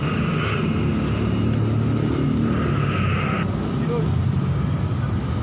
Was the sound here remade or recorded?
recorded